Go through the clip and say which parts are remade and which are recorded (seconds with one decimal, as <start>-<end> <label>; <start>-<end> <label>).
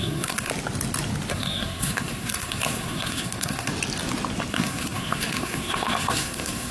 0.0-0.5 remade; 0.5-1.3 recorded; 1.3-3.7 remade; 3.7-4.5 recorded; 4.5-6.7 remade